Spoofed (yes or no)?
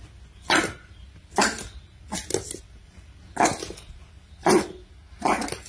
no